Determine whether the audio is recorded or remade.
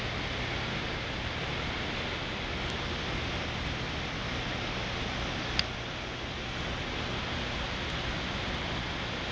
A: recorded